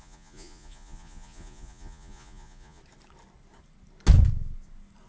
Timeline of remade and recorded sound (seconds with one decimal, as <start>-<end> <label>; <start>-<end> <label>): 0.0-2.8 remade; 2.8-5.1 recorded